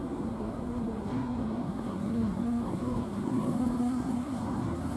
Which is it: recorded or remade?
remade